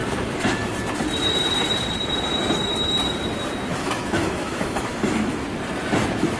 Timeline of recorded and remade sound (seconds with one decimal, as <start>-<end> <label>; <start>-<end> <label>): 0.0-3.7 recorded; 3.7-5.4 remade; 5.4-6.4 recorded

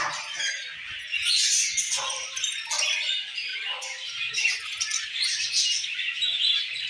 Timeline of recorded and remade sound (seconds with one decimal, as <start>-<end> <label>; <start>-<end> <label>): 0.0-6.9 recorded

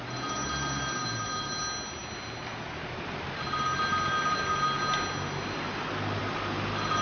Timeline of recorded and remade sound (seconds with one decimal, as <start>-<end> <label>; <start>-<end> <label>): 0.0-7.0 recorded

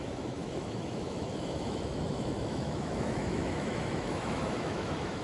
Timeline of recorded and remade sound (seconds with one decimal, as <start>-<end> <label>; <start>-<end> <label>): 0.0-5.2 remade

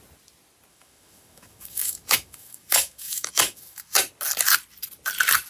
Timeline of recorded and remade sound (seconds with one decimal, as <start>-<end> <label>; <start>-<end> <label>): 0.0-0.7 recorded; 0.7-4.0 remade; 4.0-5.5 recorded